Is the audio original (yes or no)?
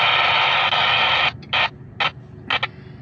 yes